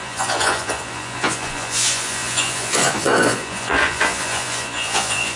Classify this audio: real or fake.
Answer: fake